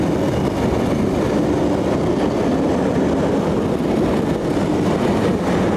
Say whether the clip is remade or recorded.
recorded